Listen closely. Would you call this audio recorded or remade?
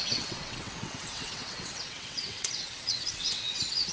remade